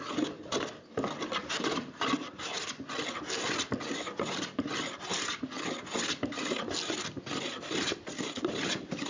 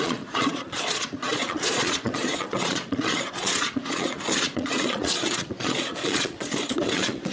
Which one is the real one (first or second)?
first